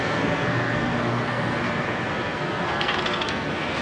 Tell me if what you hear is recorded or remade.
remade